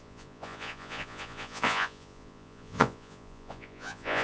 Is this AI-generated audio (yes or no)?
yes